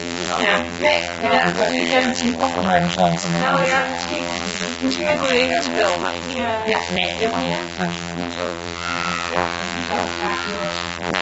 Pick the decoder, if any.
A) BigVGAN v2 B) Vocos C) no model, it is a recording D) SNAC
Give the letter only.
A